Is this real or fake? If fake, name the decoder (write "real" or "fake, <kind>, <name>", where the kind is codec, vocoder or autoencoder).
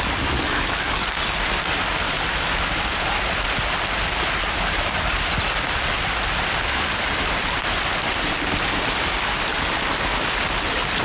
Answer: real